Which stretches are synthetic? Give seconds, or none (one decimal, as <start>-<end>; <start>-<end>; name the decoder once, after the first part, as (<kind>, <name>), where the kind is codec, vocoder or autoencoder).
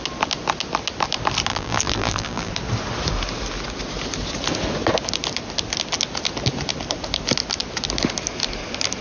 1.5-2.5 (vocoder, BigVGAN v2)